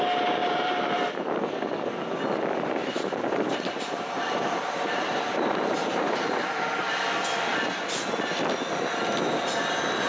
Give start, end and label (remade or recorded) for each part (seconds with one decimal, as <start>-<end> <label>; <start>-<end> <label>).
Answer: 0.0-0.4 recorded; 0.4-1.2 remade; 1.2-2.8 recorded; 2.8-7.1 remade; 7.1-10.1 recorded